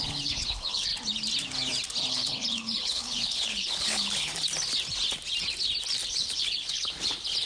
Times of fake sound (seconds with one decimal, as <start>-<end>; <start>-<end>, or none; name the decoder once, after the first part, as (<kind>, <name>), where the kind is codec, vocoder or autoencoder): 0.0-0.9 (codec, HILCodec); 2.1-4.3; 6.1-7.5